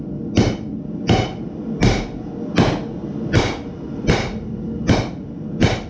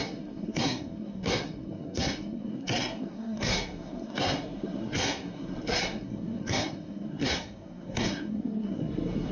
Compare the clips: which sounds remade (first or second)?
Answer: second